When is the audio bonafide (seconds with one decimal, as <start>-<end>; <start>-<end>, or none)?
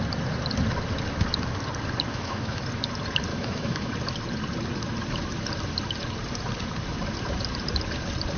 0.0-2.1; 2.6-3.3; 3.9-8.4